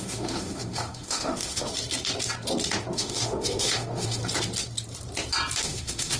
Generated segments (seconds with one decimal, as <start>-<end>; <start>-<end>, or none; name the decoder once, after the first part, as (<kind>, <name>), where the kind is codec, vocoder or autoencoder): 0.0-1.7 (autoencoder, DAC-VAE); 2.9-4.2; 5.6-6.2